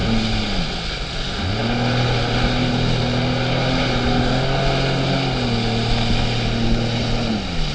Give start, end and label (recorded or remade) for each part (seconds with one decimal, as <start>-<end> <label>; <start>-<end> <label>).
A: 0.0-7.7 recorded